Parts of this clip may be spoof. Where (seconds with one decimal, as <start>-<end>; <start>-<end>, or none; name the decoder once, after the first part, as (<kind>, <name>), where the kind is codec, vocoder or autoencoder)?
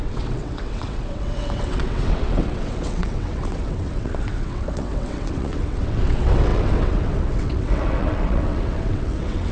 0.0-9.5 (vocoder, WaveNeXt)